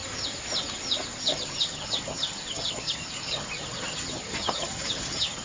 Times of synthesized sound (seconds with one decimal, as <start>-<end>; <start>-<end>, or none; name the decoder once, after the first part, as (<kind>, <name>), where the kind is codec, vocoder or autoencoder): 1.2-5.4 (vocoder, HiFi-GAN)